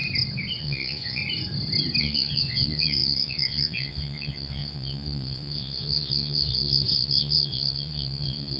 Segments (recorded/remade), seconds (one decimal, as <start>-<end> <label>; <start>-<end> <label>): 0.0-0.6 recorded; 0.6-1.2 remade; 1.2-2.0 recorded; 2.0-8.6 remade